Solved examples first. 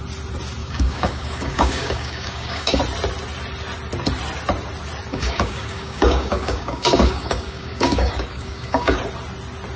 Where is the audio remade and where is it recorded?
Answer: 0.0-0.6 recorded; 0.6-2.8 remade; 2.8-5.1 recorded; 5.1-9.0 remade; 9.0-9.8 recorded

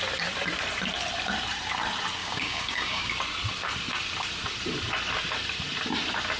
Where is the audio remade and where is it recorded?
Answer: 0.0-2.2 recorded; 2.2-3.1 remade; 3.1-6.4 recorded

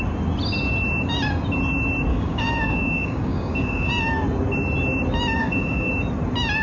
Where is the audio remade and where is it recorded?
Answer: 0.0-2.1 recorded; 2.1-3.9 remade; 3.9-5.4 recorded; 5.4-5.9 remade; 5.9-6.6 recorded

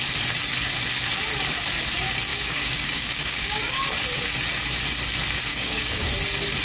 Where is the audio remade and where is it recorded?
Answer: 0.0-2.3 recorded; 2.3-3.9 remade; 3.9-5.5 recorded; 5.5-6.1 remade; 6.1-6.6 recorded